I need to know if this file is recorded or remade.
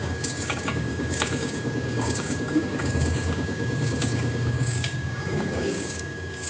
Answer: remade